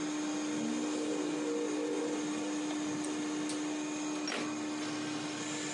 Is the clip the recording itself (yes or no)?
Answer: yes